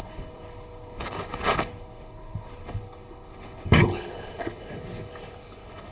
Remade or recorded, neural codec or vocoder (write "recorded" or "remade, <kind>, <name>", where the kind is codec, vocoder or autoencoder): remade, codec, HILCodec